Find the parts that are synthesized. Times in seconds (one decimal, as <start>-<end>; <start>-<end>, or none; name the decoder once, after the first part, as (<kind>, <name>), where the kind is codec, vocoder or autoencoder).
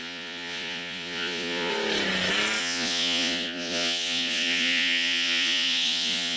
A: 0.0-1.7 (vocoder, Vocos); 2.6-6.4